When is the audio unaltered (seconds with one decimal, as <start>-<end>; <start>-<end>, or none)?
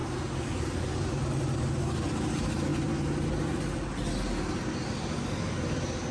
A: 0.0-6.1